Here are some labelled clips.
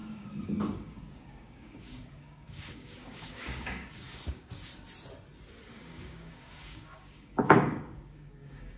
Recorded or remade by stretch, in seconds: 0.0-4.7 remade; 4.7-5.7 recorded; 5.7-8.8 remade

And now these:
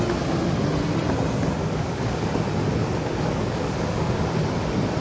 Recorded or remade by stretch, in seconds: 0.0-1.6 recorded; 1.6-2.3 remade; 2.3-2.8 recorded; 2.8-4.2 remade; 4.2-5.0 recorded

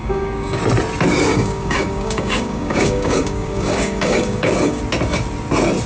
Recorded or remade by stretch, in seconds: 0.0-0.6 remade; 0.6-1.3 recorded; 1.3-4.8 remade; 4.8-5.9 recorded

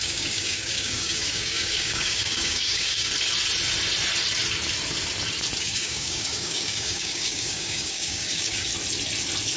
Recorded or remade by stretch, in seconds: 0.0-3.1 remade; 3.1-5.6 recorded; 5.6-8.7 remade; 8.7-9.6 recorded

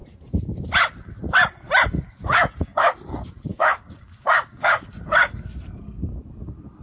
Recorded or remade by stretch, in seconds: 0.0-2.2 recorded; 2.2-2.9 remade; 2.9-3.5 recorded; 3.5-4.9 remade; 4.9-6.8 recorded

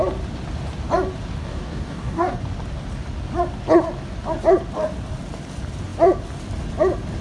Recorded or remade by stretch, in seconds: 0.0-1.4 recorded; 1.4-2.4 remade; 2.4-7.2 recorded

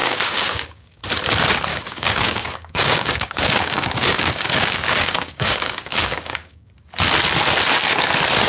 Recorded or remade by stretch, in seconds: 0.0-1.0 remade; 1.0-1.7 recorded; 1.7-6.7 remade; 6.7-8.5 recorded